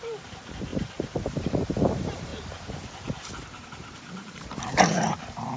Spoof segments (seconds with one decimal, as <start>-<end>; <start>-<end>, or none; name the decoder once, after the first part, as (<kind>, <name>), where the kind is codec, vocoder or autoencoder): 0.0-2.3 (vocoder, BigVGAN v2); 3.6-5.6